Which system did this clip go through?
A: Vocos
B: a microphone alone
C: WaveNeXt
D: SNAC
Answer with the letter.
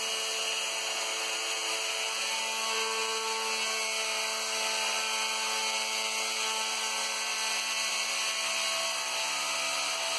B